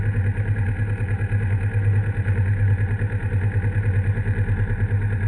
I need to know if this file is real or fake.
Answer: real